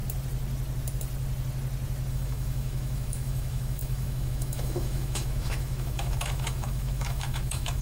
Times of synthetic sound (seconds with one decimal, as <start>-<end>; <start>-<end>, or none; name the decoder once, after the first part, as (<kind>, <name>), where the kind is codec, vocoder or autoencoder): 2.1-7.8 (autoencoder, DAC-VAE)